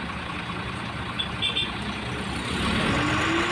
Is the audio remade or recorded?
recorded